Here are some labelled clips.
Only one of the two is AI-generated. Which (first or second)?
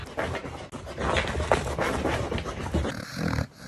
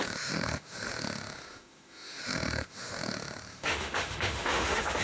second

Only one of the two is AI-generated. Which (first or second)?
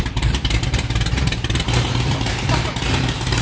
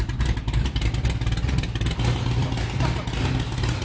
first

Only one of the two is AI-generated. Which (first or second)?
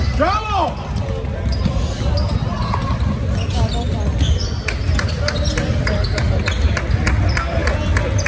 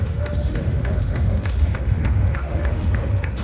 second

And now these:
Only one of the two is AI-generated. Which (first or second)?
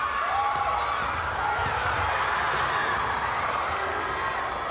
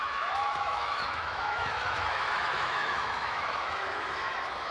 second